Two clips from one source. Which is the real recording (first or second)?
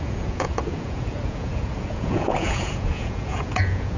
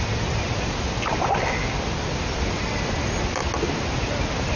second